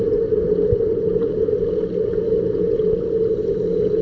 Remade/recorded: recorded